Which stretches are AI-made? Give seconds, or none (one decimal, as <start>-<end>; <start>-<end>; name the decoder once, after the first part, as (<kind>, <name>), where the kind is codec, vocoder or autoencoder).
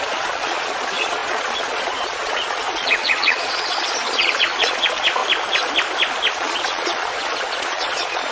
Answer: 0.0-5.2 (vocoder, Vocos); 6.3-8.3